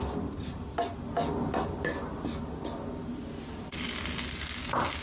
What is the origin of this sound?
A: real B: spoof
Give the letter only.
A